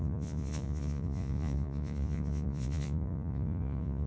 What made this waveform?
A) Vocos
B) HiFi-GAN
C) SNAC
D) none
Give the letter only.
A